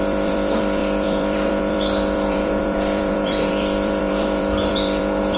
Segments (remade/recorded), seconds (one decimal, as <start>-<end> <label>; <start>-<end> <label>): 0.0-5.4 remade